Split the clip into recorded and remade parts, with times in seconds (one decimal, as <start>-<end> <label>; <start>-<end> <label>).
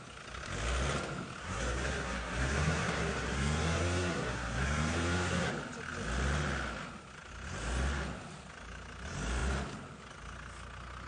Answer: 0.0-1.4 recorded; 1.4-5.5 remade; 5.5-11.1 recorded